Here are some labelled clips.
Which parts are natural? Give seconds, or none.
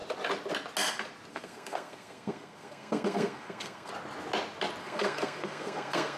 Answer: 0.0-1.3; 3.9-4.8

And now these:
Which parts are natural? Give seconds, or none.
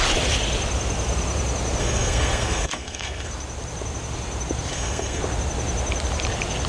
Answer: 0.0-1.8; 3.3-4.7; 5.2-6.7